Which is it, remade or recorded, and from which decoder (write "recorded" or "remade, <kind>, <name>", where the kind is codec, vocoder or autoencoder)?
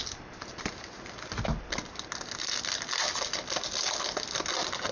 recorded